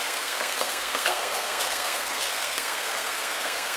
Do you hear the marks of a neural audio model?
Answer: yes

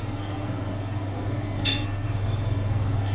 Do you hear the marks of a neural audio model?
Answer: yes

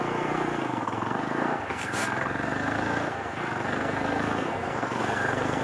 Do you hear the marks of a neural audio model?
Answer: yes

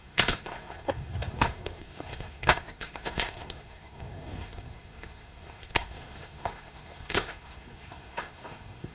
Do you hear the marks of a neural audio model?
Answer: yes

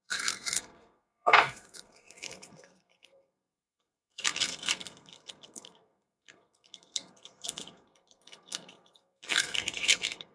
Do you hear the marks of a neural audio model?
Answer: yes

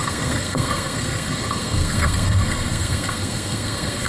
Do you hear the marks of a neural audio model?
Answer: yes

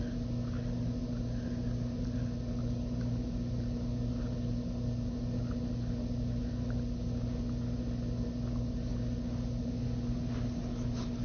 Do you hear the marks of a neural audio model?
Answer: no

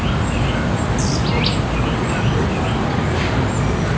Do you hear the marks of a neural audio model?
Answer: no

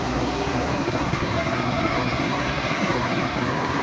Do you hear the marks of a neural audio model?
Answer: yes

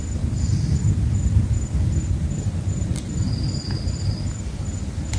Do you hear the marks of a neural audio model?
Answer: no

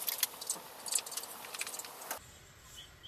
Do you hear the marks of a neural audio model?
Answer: no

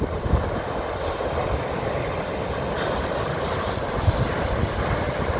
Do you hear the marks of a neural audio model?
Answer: no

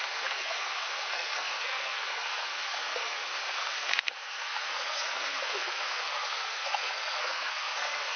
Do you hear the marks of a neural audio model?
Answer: yes